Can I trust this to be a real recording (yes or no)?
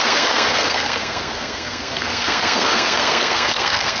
no